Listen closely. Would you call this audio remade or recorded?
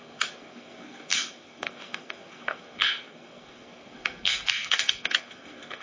remade